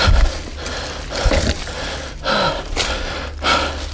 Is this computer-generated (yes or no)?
no